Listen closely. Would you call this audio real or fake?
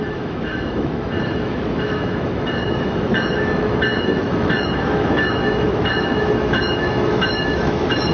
fake